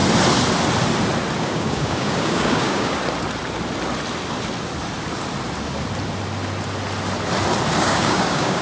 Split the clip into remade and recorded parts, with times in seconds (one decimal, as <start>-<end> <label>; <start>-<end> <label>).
0.0-1.4 recorded; 1.4-3.0 remade; 3.0-7.8 recorded; 7.8-8.6 remade